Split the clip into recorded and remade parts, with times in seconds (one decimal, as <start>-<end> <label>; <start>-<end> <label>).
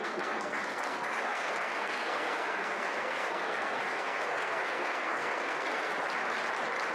0.0-5.9 remade; 5.9-6.9 recorded